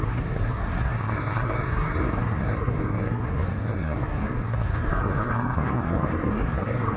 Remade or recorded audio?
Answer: remade